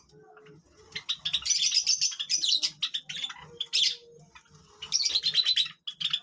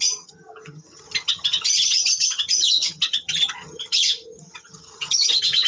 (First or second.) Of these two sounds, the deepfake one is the second